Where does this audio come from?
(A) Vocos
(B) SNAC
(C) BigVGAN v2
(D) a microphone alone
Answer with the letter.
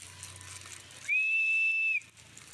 D